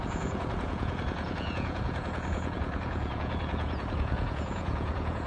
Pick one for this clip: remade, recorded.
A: remade